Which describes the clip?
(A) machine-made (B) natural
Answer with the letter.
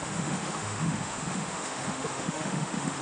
A